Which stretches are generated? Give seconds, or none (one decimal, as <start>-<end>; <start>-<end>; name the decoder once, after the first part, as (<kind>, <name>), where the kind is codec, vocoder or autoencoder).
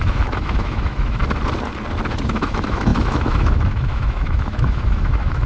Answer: 0.0-1.2 (autoencoder, DAC-VAE); 2.3-5.5